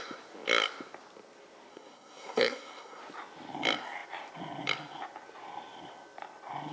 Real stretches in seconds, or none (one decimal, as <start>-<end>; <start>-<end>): 0.0-1.7; 3.0-6.7